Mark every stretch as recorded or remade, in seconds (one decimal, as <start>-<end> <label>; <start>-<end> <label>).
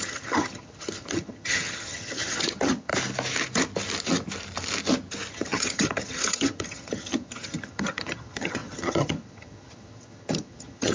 0.0-2.9 remade; 2.9-5.3 recorded; 5.3-10.9 remade